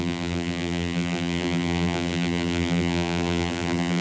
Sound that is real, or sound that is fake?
fake